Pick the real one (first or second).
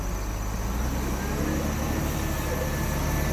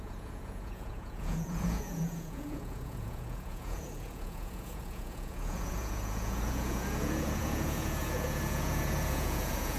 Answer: first